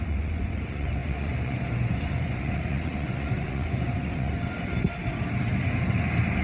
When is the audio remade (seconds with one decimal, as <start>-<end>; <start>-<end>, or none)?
0.0-4.5